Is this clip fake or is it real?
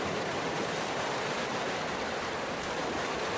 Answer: real